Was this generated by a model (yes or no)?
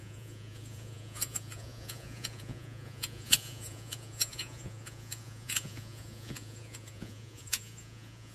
yes